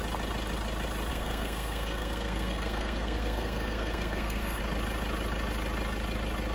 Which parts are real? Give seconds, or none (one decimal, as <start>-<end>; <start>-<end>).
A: 0.0-1.1; 4.6-6.5